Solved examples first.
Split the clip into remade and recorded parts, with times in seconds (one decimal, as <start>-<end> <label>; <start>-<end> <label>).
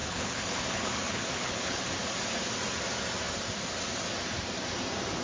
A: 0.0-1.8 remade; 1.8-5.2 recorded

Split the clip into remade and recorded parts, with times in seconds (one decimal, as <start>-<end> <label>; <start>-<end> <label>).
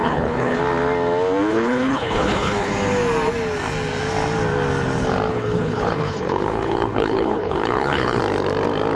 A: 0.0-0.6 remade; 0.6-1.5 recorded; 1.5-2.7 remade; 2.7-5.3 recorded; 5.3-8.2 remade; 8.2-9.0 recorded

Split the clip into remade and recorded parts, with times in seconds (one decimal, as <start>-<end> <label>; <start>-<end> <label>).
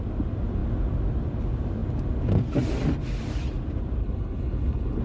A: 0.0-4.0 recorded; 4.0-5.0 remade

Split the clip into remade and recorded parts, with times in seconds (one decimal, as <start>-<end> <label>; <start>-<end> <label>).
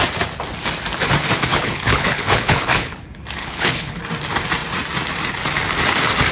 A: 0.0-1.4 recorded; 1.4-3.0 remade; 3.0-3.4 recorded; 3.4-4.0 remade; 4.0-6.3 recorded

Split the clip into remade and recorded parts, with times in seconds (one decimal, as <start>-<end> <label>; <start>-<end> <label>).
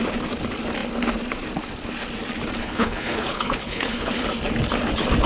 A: 0.0-2.6 recorded; 2.6-4.1 remade; 4.1-5.3 recorded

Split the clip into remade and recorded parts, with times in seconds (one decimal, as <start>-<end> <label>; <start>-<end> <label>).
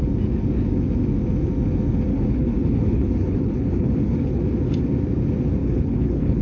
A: 0.0-2.1 recorded; 2.1-4.4 remade; 4.4-5.6 recorded; 5.6-6.4 remade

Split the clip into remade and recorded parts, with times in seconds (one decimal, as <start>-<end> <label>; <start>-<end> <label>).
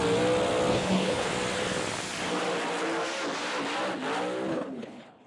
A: 0.0-0.7 recorded; 0.7-1.3 remade; 1.3-4.5 recorded; 4.5-5.3 remade